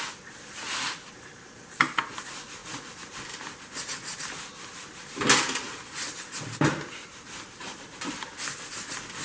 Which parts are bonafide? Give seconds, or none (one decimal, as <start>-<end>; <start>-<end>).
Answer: 0.0-9.2